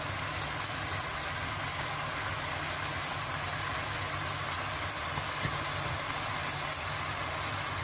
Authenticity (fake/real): real